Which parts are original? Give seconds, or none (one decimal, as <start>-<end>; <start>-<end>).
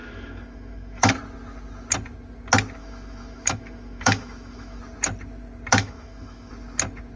1.1-2.8; 4.8-5.8; 6.5-7.2